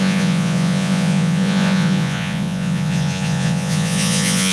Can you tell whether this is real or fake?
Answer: fake